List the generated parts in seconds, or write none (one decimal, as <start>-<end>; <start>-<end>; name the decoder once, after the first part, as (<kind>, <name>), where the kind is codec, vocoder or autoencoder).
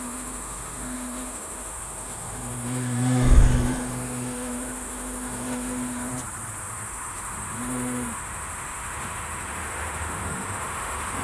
0.0-6.1 (autoencoder, DAC-VAE); 6.6-11.2